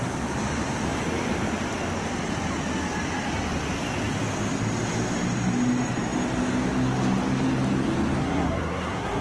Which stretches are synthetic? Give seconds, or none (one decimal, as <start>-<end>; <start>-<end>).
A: 8.2-9.2